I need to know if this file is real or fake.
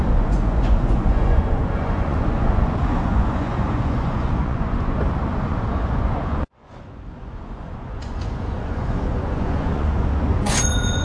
fake